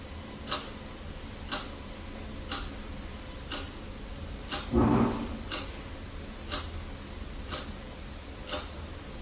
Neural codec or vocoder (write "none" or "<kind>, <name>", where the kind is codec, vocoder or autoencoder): none